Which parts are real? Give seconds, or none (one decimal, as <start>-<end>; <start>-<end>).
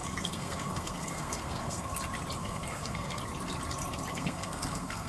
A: 2.0-2.4; 3.2-4.1